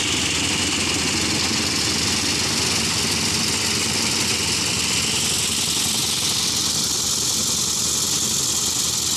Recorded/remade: recorded